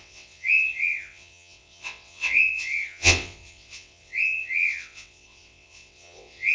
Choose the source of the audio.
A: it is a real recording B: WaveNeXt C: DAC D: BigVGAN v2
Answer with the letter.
B